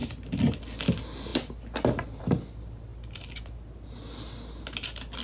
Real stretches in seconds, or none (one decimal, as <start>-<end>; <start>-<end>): 0.0-5.2

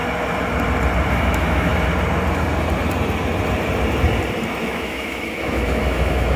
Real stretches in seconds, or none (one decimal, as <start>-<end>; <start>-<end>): 0.0-1.1; 1.7-4.6

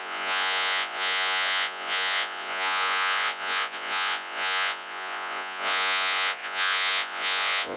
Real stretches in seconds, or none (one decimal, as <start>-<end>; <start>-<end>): none

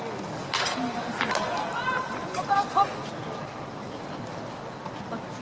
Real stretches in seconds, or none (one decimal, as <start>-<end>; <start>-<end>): 0.0-5.4

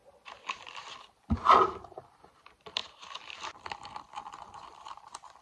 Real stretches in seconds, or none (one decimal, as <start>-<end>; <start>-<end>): 0.0-5.4